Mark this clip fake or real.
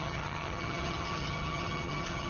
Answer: fake